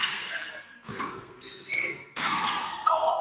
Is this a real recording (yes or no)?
no